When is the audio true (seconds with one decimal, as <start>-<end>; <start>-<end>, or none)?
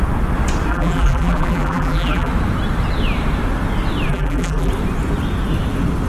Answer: 0.0-0.7; 2.3-4.1; 4.7-6.1